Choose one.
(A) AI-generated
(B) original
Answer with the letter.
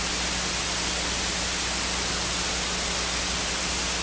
B